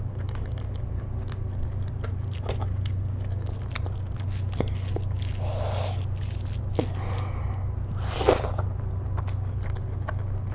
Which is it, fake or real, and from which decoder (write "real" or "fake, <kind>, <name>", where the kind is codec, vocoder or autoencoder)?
real